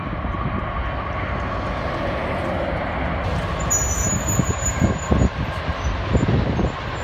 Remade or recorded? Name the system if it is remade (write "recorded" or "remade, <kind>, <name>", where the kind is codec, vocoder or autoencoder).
recorded